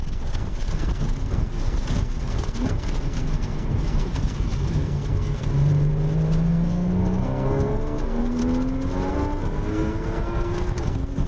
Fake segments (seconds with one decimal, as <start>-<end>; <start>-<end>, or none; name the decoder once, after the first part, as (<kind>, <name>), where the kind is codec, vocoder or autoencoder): 0.0-5.5 (codec, SNAC); 6.4-8.4; 9.1-11.3